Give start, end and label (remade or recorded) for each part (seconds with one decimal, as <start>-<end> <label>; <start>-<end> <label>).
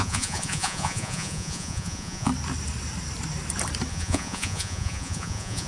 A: 0.0-2.3 remade; 2.3-3.9 recorded; 3.9-5.7 remade